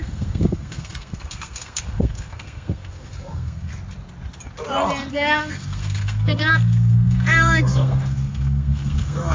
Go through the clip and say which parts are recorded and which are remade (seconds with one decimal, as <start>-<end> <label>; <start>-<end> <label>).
0.0-3.7 remade; 3.7-5.1 recorded; 5.1-9.3 remade